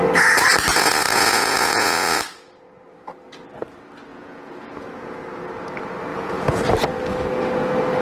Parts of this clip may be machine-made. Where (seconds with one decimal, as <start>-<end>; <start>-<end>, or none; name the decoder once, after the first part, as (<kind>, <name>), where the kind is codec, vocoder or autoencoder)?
0.7-2.2 (vocoder, Vocos); 4.1-5.5; 6.1-6.6